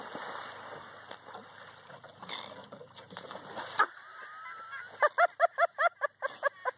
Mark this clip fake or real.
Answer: real